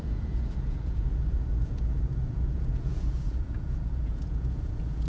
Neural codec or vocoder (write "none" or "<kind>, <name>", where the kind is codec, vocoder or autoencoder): vocoder, Vocos